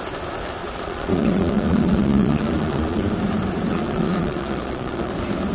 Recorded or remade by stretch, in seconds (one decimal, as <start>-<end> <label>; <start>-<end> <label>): 0.0-0.6 recorded; 0.6-3.1 remade; 3.1-3.7 recorded; 3.7-5.1 remade; 5.1-5.5 recorded